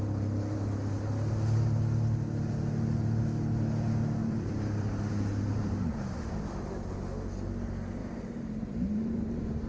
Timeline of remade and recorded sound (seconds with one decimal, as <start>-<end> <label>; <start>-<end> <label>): 0.0-4.2 recorded; 4.2-6.5 remade; 6.5-8.0 recorded; 8.0-9.7 remade

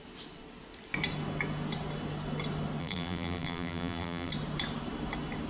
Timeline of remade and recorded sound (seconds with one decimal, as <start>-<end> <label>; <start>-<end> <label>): 0.0-2.8 recorded; 2.8-4.3 remade; 4.3-5.5 recorded

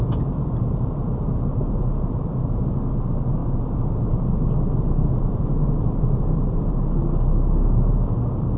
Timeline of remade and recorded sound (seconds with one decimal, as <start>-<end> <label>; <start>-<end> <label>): 0.0-8.6 remade

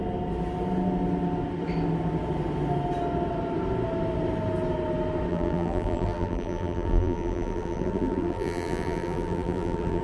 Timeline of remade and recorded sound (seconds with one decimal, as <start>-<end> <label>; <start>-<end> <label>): 0.0-5.3 recorded; 5.3-10.0 remade